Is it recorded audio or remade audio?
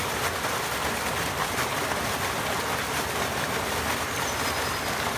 recorded